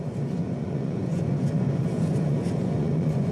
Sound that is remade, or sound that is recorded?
remade